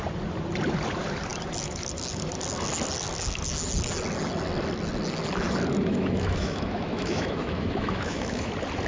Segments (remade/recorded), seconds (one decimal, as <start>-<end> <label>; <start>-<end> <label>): 0.0-5.9 recorded; 5.9-8.5 remade; 8.5-8.9 recorded